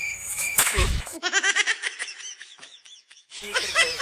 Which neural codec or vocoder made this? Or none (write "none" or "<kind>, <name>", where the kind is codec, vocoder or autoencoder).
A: autoencoder, DAC-VAE